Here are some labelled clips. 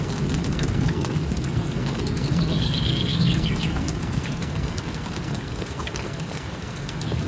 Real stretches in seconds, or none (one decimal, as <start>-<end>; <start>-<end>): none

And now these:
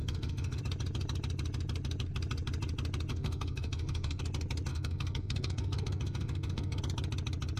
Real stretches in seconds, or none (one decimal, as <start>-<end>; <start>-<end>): 0.6-3.1; 4.2-4.7; 6.8-7.6

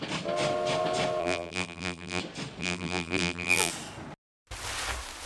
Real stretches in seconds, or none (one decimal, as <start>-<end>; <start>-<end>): 0.0-1.2; 2.2-2.6; 3.7-5.3